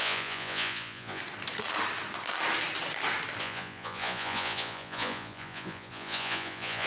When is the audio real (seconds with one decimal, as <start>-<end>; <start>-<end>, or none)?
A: 1.2-3.4